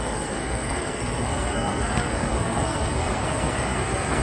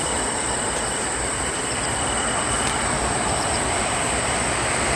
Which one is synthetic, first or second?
first